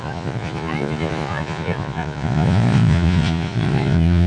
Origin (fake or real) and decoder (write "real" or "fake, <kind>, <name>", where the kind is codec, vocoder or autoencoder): fake, vocoder, Vocos